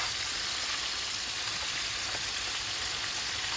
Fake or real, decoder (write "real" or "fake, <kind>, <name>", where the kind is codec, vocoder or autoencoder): real